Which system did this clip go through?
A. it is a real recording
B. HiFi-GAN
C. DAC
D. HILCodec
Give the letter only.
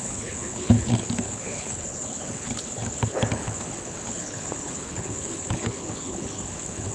D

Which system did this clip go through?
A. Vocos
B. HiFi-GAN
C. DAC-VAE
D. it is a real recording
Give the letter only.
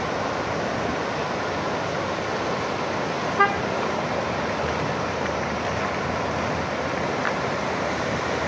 D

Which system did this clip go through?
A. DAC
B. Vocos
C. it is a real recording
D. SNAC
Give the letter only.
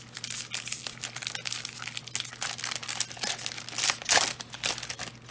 C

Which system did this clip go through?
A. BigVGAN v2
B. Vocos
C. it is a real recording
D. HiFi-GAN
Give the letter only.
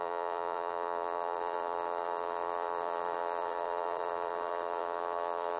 A